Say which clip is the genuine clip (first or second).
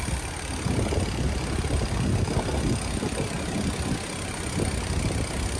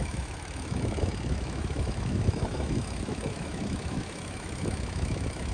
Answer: first